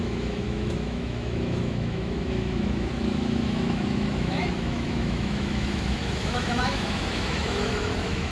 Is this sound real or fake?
fake